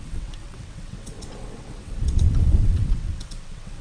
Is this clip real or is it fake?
fake